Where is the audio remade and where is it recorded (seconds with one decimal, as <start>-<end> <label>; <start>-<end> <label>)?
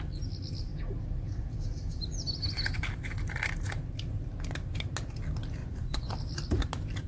0.0-5.6 recorded; 5.6-6.1 remade; 6.1-7.1 recorded